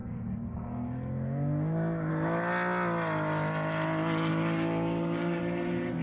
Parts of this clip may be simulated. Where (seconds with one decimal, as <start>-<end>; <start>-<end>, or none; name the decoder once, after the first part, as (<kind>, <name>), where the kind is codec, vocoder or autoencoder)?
0.0-2.1 (codec, DAC); 4.3-5.4